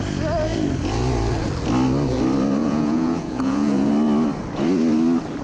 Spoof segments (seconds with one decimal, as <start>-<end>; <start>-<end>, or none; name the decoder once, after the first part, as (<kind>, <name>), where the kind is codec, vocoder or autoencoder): 2.6-3.9 (vocoder, Vocos)